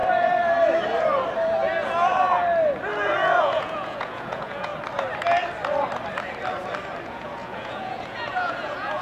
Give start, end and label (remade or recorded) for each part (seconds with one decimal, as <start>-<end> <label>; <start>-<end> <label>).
0.0-3.4 recorded; 3.4-4.7 remade; 4.7-7.0 recorded; 7.0-9.0 remade